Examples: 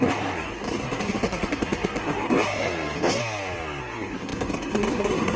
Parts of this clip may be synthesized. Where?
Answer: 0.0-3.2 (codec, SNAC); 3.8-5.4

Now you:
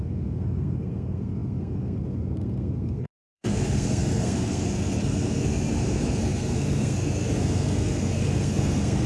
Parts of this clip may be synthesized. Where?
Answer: 0.0-9.1 (codec, SNAC)

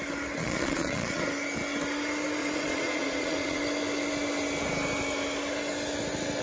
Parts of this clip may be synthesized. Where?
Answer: 0.4-1.2 (vocoder, Vocos); 2.4-3.6

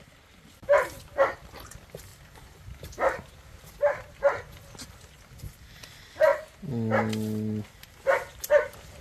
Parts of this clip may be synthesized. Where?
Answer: 2.1-3.3 (vocoder, BigVGAN v2)

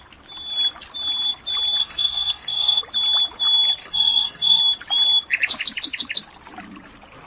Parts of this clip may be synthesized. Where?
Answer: 1.8-2.8 (codec, SNAC); 3.8-4.6